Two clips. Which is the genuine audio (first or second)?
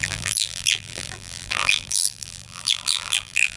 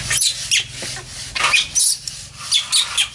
second